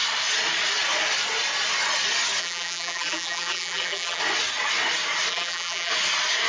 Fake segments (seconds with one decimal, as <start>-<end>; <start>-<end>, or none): 2.4-4.2; 5.3-5.9